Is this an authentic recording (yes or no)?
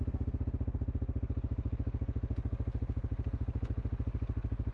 yes